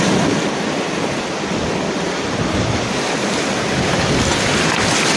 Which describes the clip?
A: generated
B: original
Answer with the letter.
B